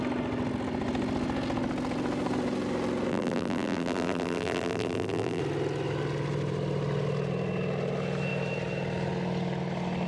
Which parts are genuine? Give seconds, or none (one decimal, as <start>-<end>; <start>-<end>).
0.0-3.1; 5.4-10.1